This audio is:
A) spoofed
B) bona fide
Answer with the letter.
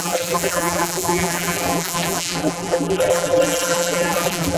A